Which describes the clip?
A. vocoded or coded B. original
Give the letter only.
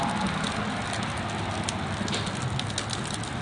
B